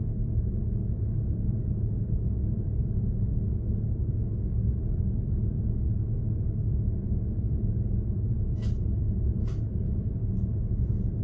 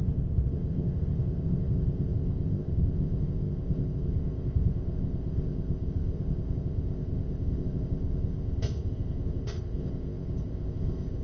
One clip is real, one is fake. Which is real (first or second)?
first